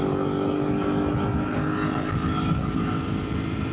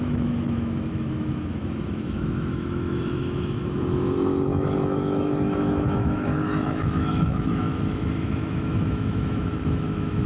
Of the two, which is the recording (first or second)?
first